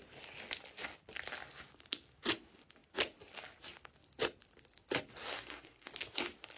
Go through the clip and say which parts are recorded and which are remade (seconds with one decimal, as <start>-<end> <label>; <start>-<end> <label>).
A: 0.0-5.3 recorded; 5.3-5.9 remade; 5.9-6.6 recorded